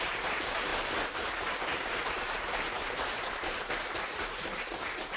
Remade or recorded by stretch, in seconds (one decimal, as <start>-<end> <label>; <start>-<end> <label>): 0.0-0.7 remade; 0.7-1.9 recorded; 1.9-5.2 remade